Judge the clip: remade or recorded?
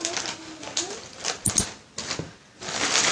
recorded